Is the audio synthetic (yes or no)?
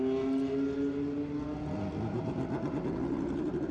no